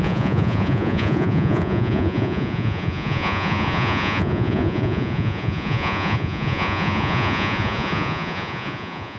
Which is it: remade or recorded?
remade